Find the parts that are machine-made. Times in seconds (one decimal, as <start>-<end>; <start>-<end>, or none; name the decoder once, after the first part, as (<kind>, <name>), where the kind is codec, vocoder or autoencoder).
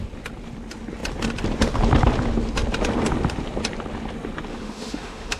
4.5-5.4 (autoencoder, DAC-VAE)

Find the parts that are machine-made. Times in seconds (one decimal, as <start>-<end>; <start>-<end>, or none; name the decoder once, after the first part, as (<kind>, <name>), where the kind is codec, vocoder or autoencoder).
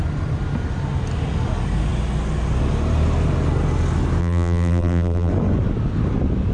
4.2-5.3 (vocoder, BigVGAN v2)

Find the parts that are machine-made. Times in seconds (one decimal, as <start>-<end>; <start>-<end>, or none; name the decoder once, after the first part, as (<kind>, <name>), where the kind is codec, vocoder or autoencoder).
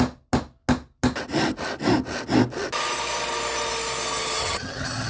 4.4-5.1 (vocoder, HiFi-GAN)